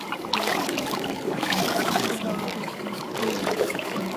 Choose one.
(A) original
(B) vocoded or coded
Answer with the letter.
B